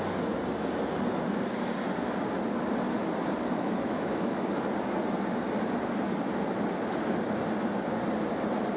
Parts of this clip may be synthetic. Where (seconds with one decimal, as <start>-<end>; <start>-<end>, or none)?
3.4-4.6